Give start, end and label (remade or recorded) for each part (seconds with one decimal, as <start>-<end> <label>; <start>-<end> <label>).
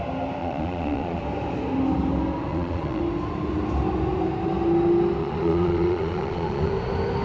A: 0.0-0.4 recorded; 0.4-1.2 remade; 1.2-2.5 recorded; 2.5-3.0 remade; 3.0-5.2 recorded; 5.2-6.7 remade; 6.7-7.2 recorded